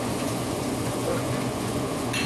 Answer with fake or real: fake